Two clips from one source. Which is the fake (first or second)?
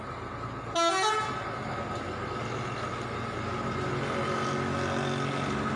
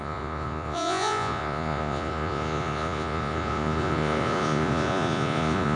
second